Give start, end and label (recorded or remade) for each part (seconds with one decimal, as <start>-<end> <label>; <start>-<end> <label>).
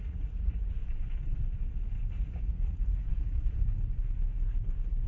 0.0-0.8 remade; 0.8-2.1 recorded; 2.1-3.7 remade; 3.7-5.1 recorded